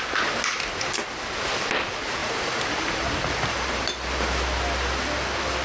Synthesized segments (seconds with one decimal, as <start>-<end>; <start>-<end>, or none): 2.2-3.8